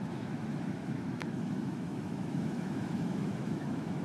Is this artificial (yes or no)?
yes